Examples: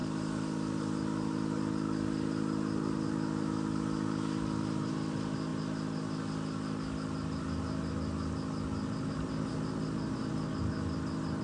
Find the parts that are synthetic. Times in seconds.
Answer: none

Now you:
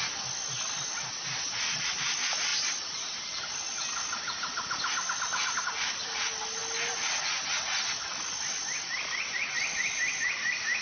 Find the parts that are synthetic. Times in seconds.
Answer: none

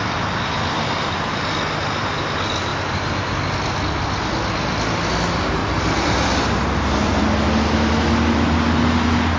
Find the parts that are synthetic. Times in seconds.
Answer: 5.6-7.2

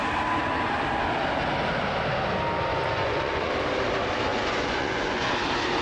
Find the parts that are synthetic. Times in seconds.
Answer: 2.7-3.5; 4.3-5.3